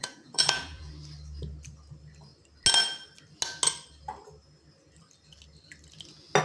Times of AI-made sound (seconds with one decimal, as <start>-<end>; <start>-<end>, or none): 0.0-0.9